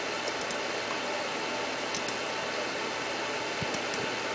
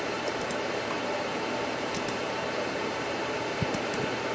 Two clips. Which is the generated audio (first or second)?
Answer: second